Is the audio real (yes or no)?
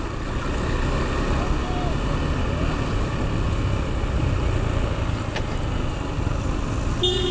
yes